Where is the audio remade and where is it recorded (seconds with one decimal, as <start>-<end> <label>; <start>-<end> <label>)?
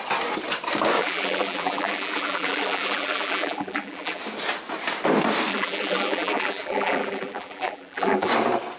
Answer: 0.0-1.0 recorded; 1.0-4.2 remade; 4.2-5.5 recorded; 5.5-8.3 remade; 8.3-8.8 recorded